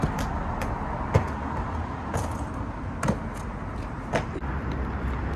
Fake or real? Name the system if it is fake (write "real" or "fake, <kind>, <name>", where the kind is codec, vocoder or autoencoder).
real